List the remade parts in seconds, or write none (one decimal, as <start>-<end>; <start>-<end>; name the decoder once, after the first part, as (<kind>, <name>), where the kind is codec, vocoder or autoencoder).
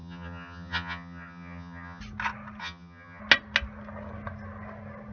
0.0-2.0 (vocoder, HiFi-GAN); 2.6-3.2